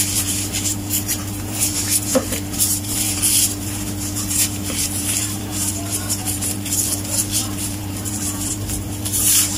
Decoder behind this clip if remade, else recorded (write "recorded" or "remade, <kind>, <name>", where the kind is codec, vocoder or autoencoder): remade, vocoder, BigVGAN v2